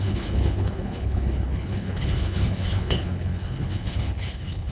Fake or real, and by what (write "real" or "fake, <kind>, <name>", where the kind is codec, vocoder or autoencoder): fake, codec, HILCodec